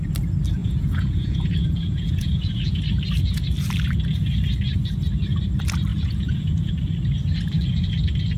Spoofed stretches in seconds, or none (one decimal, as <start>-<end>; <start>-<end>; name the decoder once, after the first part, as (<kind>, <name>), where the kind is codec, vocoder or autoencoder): 0.6-2.8 (vocoder, Vocos); 5.9-6.7